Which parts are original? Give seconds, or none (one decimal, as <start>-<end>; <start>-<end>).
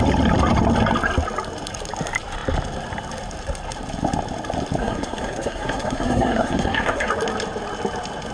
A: 0.0-4.8; 7.1-8.3